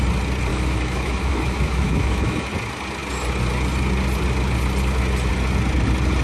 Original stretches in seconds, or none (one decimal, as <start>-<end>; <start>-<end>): 0.0-0.5; 2.5-6.2